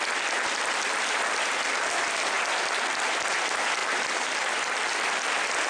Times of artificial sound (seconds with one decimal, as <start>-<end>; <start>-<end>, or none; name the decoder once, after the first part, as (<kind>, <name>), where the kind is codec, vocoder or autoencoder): none